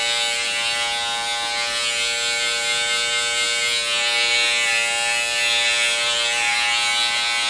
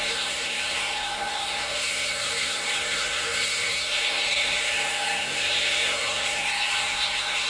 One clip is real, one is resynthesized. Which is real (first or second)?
first